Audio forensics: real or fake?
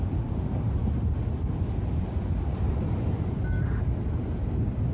real